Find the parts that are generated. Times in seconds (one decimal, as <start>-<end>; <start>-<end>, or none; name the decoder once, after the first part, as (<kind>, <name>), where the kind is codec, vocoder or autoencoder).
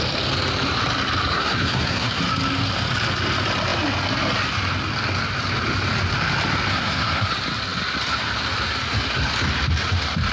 1.3-2.2 (codec, SNAC); 6.7-7.3